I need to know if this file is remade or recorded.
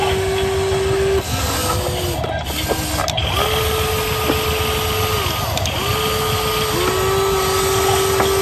recorded